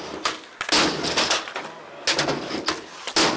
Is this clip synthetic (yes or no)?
no